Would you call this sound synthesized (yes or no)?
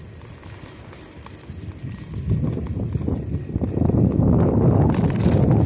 no